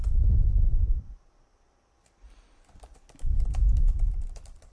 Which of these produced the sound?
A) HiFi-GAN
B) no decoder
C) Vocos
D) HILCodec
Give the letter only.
B